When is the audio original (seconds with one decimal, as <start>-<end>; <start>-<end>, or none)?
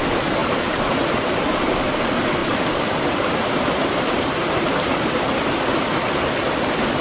0.0-0.4; 2.0-2.4; 5.6-7.0